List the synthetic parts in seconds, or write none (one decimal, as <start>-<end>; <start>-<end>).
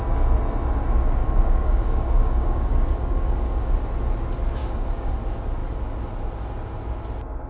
1.2-3.8; 4.6-5.1